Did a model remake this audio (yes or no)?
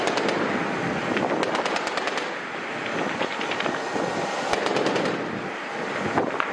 no